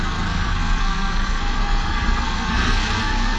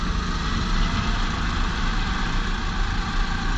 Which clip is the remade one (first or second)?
first